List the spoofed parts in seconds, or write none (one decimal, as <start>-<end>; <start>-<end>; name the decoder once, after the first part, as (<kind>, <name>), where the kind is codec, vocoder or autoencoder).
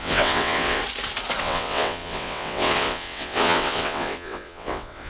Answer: 0.0-0.8 (vocoder, WaveNeXt); 1.4-5.1